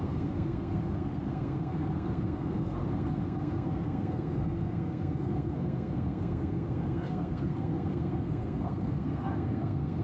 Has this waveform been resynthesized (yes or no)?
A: yes